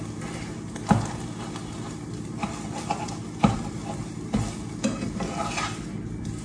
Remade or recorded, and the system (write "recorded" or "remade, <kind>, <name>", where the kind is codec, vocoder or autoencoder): recorded